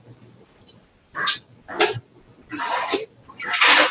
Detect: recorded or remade recorded